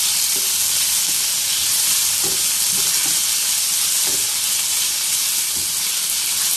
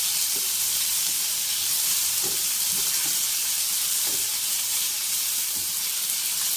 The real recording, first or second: first